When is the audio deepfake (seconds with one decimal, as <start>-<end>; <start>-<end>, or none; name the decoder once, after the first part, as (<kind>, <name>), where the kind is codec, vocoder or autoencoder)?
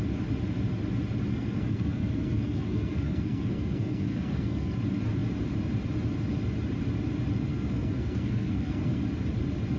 1.3-4.8 (codec, SNAC); 7.5-9.0